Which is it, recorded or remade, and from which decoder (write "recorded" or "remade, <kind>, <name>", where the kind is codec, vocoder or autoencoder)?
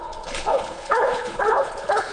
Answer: remade, codec, HILCodec